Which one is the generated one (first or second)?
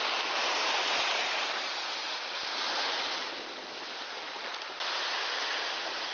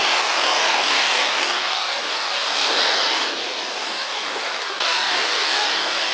second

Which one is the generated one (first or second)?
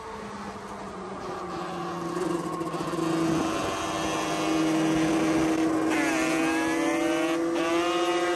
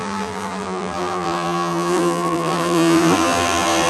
second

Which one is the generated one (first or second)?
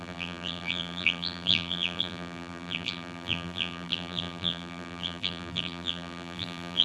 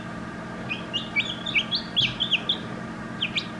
first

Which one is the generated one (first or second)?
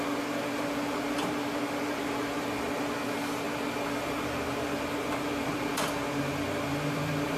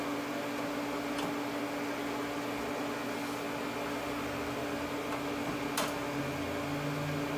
first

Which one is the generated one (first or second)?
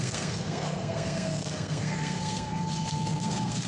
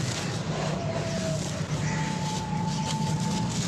first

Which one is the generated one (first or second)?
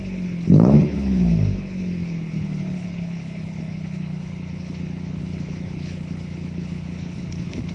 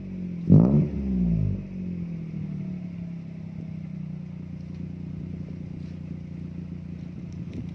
first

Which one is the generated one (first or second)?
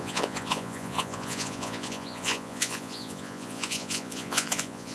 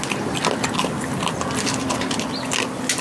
first